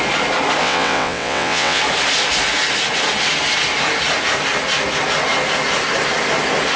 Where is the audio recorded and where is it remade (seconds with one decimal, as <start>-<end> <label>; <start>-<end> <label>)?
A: 0.0-0.6 recorded; 0.6-1.8 remade; 1.8-6.8 recorded

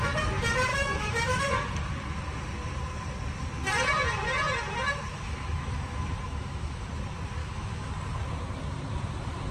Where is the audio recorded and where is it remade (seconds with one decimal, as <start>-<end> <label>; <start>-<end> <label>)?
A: 0.0-0.7 recorded; 0.7-1.4 remade; 1.4-5.1 recorded; 5.1-6.9 remade; 6.9-7.4 recorded; 7.4-7.9 remade; 7.9-9.5 recorded

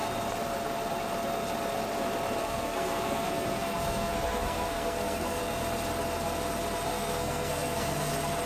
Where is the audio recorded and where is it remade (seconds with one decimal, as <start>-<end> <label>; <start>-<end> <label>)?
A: 0.0-2.4 recorded; 2.4-5.4 remade; 5.4-6.9 recorded; 6.9-8.1 remade; 8.1-8.5 recorded

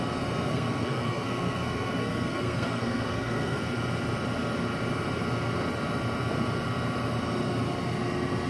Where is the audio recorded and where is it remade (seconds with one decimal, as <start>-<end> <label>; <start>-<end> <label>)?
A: 0.0-0.5 recorded; 0.5-3.6 remade; 3.6-8.5 recorded